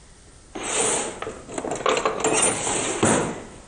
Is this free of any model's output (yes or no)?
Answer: yes